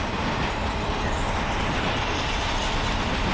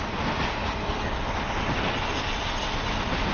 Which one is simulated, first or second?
first